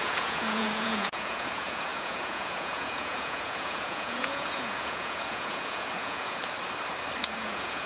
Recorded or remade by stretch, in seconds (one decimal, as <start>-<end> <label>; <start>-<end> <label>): 0.0-6.4 remade; 6.4-7.2 recorded; 7.2-7.9 remade